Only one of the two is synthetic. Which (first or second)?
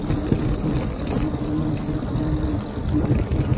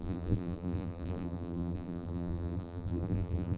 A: second